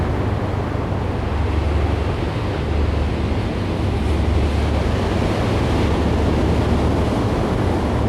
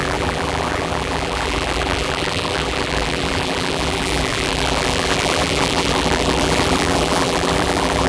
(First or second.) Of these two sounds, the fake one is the second